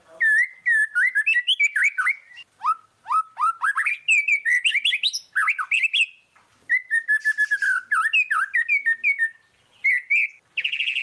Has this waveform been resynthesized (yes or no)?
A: no